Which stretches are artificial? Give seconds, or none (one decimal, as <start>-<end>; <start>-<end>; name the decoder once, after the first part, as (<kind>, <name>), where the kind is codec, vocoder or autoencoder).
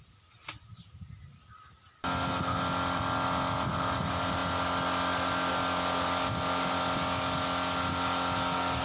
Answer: none